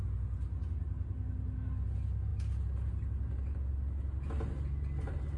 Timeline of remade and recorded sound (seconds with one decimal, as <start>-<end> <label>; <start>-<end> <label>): 0.0-5.4 recorded